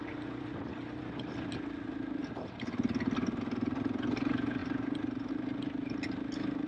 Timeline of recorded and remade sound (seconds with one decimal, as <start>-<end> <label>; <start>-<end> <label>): 0.0-6.7 recorded